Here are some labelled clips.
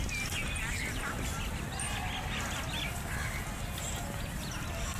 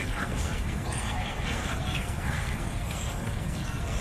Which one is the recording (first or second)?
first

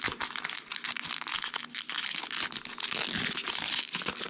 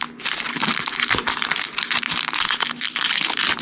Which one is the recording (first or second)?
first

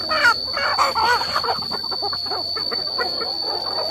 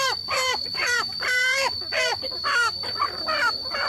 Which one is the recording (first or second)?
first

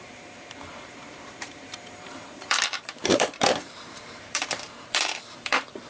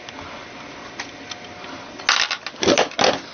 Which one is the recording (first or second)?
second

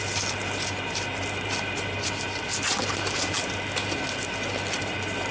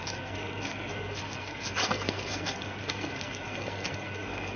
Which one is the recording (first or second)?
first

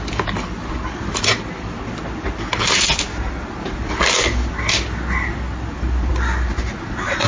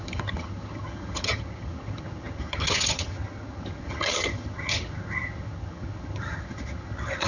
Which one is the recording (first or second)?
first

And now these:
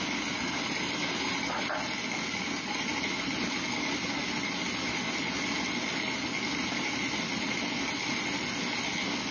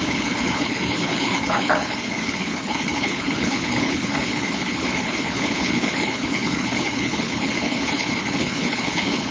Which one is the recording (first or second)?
first